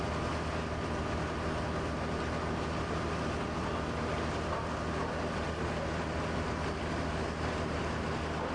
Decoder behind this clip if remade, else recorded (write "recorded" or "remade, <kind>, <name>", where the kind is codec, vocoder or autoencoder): recorded